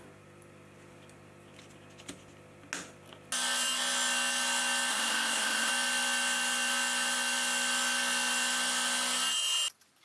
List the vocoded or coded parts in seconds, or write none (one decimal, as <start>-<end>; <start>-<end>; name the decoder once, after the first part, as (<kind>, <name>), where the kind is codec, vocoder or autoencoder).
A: 4.9-5.7 (codec, SNAC)